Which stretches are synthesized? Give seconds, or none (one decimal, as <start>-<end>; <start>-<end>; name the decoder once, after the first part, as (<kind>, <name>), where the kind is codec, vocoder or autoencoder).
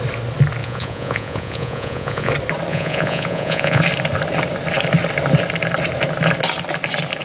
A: 0.6-2.3 (vocoder, Vocos); 2.7-3.8